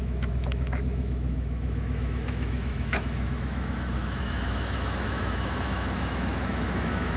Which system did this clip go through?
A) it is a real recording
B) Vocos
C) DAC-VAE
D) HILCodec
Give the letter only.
C